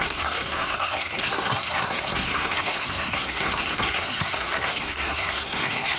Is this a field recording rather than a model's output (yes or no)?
no